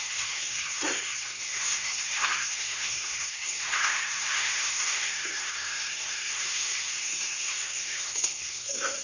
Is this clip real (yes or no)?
no